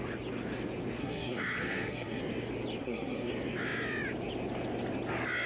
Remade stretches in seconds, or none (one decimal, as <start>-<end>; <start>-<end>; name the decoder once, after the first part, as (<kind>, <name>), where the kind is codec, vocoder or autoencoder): 1.0-2.2 (codec, SNAC); 2.8-3.3